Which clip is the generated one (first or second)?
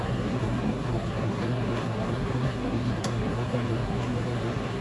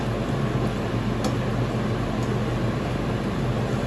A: first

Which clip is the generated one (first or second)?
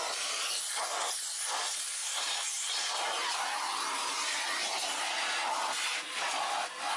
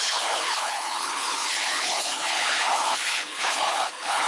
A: second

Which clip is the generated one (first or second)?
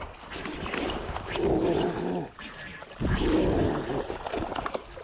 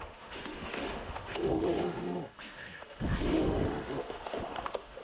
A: second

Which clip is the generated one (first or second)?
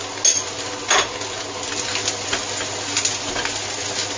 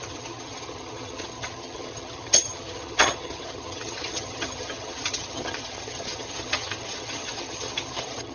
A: second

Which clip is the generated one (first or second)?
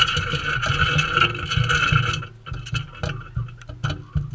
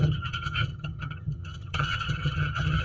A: second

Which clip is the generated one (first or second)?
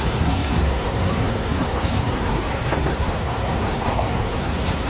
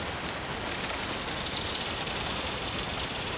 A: first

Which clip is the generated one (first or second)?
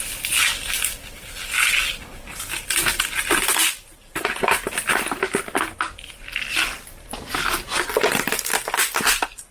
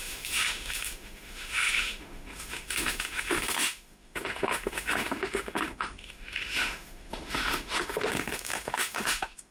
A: second